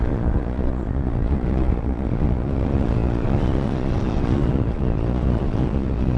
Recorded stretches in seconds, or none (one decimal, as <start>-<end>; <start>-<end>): none

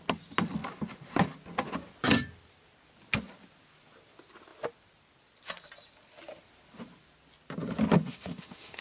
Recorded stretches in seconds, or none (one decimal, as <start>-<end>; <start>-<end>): 0.0-8.0

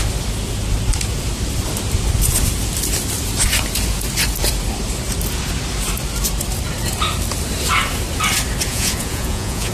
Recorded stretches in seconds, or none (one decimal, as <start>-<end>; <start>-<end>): 0.0-8.7

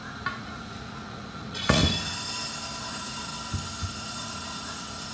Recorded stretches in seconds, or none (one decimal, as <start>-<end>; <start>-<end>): 1.8-2.8; 3.3-3.9

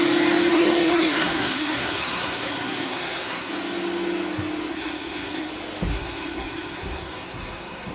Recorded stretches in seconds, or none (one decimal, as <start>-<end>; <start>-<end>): 0.0-0.5; 3.5-4.7; 5.5-5.9